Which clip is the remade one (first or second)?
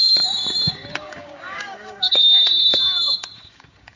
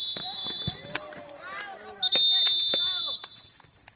first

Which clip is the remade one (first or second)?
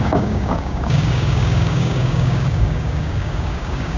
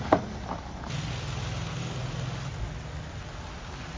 first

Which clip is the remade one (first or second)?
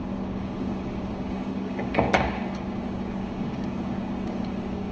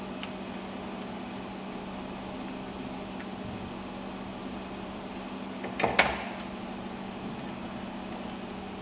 first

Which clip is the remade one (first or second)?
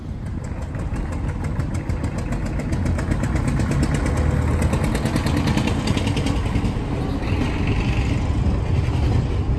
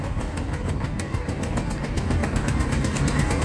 second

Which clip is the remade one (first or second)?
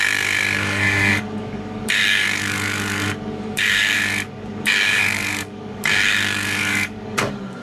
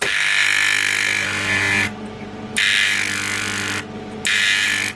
first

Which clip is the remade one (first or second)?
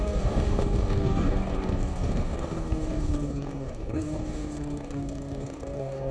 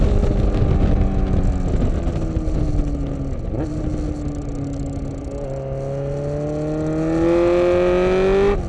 first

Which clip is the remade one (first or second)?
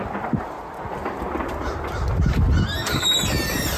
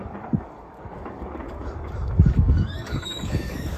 second